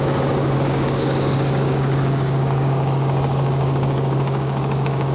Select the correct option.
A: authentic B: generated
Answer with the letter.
B